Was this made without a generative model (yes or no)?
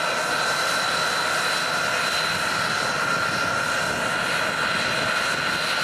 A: yes